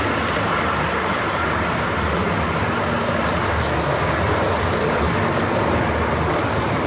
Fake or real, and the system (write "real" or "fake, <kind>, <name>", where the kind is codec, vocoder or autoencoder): real